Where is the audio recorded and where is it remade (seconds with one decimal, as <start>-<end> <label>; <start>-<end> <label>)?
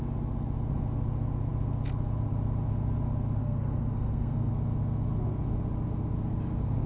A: 0.0-3.4 recorded; 3.4-4.5 remade; 4.5-6.9 recorded